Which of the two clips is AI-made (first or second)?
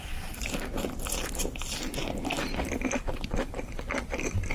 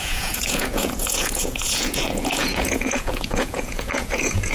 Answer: second